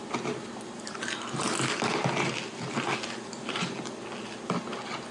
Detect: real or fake real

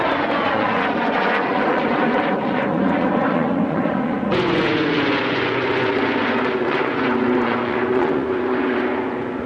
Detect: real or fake fake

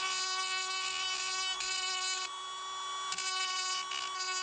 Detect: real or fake real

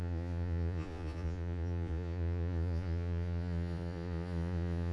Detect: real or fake fake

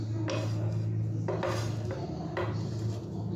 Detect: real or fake real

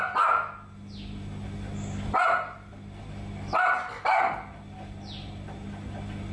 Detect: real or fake real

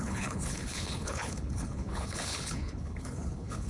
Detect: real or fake fake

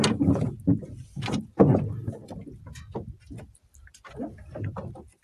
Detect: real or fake real